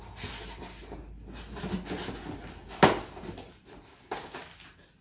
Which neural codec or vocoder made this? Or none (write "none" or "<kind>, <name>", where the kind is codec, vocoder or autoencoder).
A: none